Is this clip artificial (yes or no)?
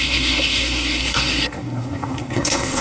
yes